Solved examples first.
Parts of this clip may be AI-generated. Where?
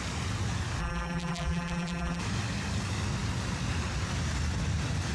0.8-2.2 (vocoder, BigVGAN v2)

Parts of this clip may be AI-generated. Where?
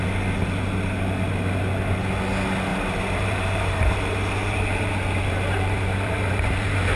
2.7-7.0 (vocoder, BigVGAN v2)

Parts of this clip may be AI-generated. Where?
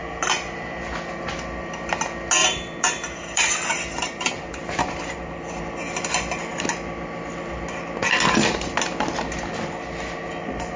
2.4-5.6 (vocoder, BigVGAN v2)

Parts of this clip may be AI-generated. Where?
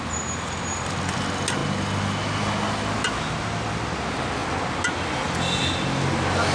none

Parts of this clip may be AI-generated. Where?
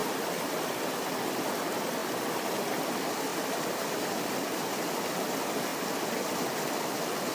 2.0-2.8 (vocoder, BigVGAN v2); 3.3-4.0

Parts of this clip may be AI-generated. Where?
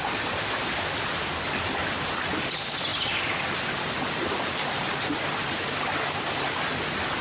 0.0-2.9 (vocoder, BigVGAN v2); 3.7-7.2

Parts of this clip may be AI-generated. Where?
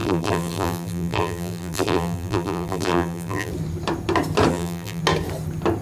0.0-3.5 (vocoder, BigVGAN v2); 4.5-5.0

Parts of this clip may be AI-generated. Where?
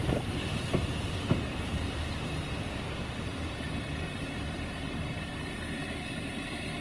0.0-6.8 (vocoder, BigVGAN v2)